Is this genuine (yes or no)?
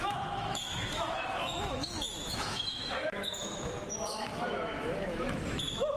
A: no